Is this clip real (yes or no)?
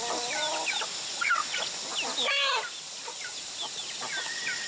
yes